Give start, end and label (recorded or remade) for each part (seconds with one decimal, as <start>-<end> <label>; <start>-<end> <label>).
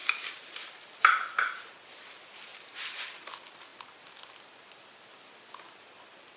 0.0-0.7 remade; 0.7-2.5 recorded; 2.5-3.3 remade; 3.3-6.4 recorded